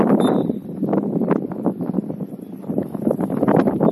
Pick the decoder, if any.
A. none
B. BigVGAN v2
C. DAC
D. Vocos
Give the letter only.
A